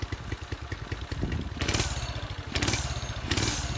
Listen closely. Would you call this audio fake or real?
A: real